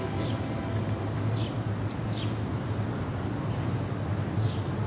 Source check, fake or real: real